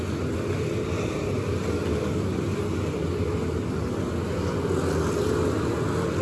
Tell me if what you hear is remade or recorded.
recorded